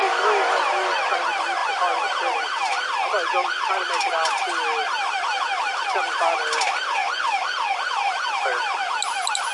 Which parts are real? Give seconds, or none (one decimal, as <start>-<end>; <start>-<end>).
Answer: 0.0-9.5